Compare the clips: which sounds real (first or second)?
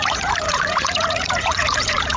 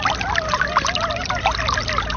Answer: second